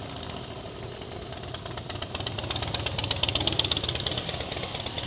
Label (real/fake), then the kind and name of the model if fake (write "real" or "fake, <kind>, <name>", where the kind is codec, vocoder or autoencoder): real